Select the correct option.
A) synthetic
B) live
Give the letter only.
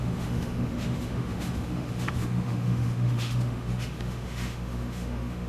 A